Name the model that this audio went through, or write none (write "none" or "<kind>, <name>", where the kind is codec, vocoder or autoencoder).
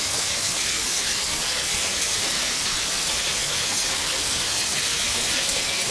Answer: codec, SNAC